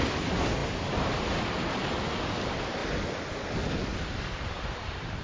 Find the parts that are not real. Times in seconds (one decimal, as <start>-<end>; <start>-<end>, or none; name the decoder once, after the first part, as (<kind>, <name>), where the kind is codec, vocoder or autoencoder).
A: none